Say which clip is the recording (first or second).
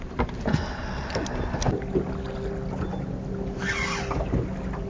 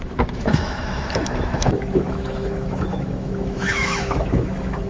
first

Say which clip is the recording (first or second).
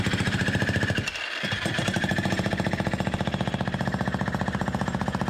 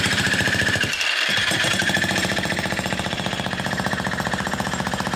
first